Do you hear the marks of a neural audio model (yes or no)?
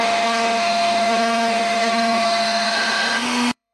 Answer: yes